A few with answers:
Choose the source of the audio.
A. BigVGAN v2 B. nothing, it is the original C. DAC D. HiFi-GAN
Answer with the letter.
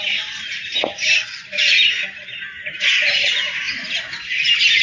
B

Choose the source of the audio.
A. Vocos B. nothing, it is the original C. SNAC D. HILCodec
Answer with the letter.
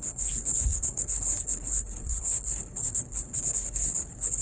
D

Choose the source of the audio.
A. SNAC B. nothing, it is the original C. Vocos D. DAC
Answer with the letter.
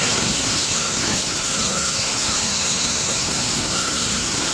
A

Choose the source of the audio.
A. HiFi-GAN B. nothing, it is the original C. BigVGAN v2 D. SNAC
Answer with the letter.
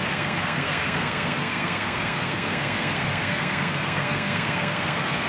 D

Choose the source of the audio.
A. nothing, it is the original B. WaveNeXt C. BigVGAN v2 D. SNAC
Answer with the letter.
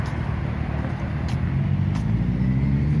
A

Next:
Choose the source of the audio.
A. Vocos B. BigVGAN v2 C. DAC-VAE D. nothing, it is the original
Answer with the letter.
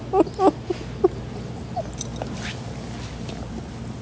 D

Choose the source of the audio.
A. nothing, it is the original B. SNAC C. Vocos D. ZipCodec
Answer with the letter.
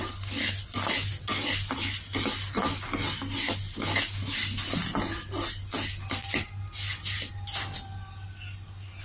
A